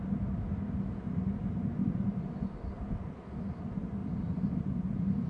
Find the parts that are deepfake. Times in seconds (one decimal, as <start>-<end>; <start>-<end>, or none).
1.8-3.1; 4.0-4.7